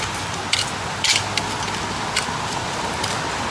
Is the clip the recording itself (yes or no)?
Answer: yes